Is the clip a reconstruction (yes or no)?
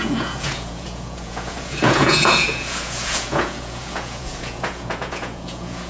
yes